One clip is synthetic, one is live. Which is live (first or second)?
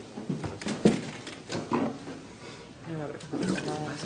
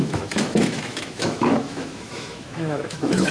first